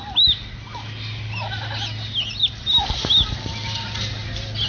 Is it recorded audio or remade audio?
recorded